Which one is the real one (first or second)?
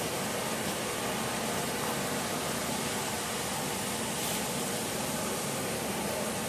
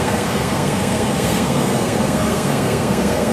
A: first